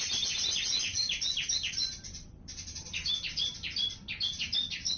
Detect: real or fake fake